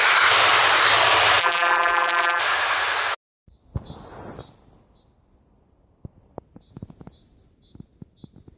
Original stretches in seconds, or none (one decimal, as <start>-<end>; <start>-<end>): 0.0-1.4; 2.4-8.6